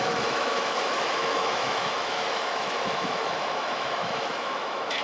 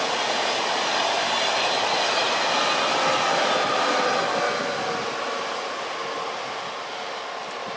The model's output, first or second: first